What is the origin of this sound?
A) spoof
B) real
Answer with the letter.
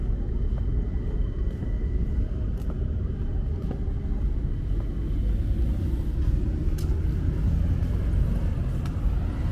B